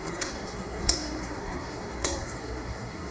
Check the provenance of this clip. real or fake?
fake